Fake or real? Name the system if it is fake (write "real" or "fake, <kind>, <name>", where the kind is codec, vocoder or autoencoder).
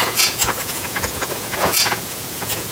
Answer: fake, vocoder, Vocos